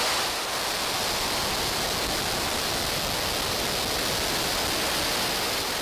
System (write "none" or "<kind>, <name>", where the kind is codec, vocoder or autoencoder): none